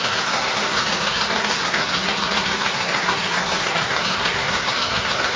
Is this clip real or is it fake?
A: fake